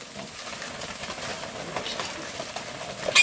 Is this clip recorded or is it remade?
recorded